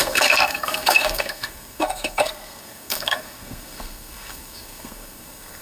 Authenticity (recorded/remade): remade